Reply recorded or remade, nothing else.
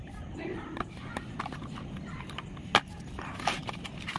recorded